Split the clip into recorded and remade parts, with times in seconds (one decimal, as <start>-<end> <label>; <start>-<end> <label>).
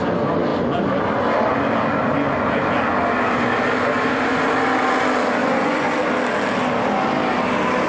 0.0-5.4 recorded; 5.4-6.0 remade; 6.0-7.9 recorded